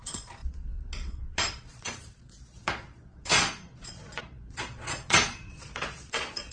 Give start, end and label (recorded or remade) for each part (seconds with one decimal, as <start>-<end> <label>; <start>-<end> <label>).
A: 0.0-6.5 remade